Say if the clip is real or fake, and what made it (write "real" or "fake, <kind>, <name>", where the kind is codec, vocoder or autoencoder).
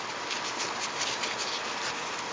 real